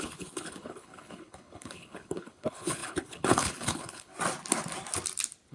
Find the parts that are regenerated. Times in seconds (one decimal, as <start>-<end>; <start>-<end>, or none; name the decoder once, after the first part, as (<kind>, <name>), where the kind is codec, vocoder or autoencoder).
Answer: 0.0-4.1 (codec, HILCodec)